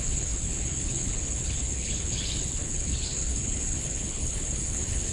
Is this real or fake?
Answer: fake